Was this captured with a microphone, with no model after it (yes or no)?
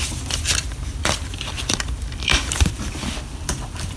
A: no